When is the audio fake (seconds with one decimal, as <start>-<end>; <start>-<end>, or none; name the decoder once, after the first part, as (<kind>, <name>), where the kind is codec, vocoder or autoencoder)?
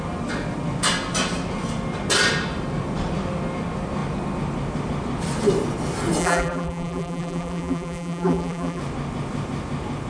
6.2-8.8 (vocoder, BigVGAN v2)